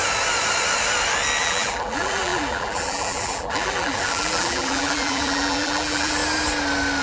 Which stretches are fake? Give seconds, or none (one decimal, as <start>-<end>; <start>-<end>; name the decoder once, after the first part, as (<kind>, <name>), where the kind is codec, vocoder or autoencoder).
1.4-6.2 (vocoder, BigVGAN v2)